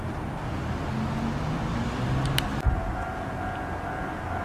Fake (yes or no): no